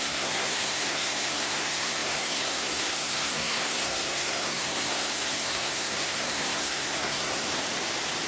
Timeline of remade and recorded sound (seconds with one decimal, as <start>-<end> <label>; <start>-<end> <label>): 0.0-7.6 remade; 7.6-8.3 recorded